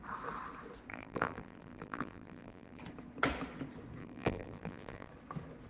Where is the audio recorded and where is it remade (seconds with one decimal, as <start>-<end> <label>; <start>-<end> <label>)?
0.0-0.9 recorded; 0.9-2.8 remade; 2.8-4.0 recorded; 4.0-5.1 remade; 5.1-5.7 recorded